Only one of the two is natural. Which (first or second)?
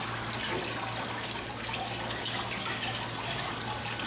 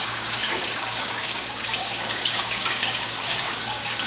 first